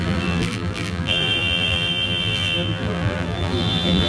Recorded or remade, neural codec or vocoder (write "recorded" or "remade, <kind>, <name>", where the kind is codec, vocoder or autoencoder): remade, vocoder, BigVGAN v2